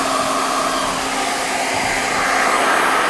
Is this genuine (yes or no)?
yes